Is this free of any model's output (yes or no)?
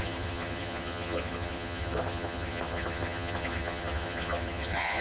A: no